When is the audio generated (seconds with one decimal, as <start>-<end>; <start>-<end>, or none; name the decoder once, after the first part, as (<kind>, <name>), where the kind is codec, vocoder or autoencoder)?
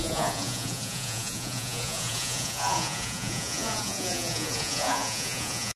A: 0.0-5.8 (vocoder, Vocos)